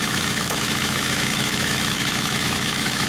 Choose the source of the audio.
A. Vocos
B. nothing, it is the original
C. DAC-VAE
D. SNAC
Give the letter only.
C